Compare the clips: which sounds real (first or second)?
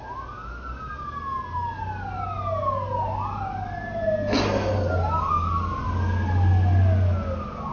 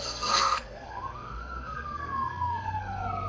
first